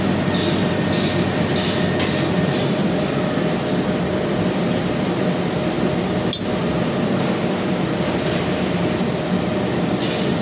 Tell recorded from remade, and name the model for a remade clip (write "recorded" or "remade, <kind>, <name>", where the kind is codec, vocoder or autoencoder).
recorded